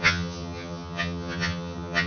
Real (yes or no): no